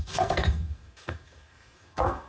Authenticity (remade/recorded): remade